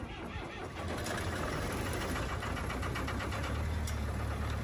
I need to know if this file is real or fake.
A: real